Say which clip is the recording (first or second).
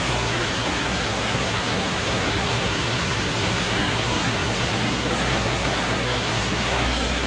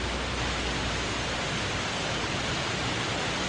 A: second